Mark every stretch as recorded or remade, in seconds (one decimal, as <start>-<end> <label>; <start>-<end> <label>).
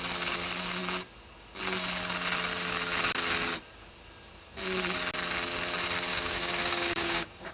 0.0-6.1 recorded; 6.1-7.5 remade